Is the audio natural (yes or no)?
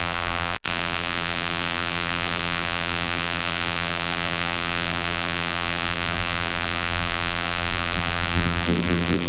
no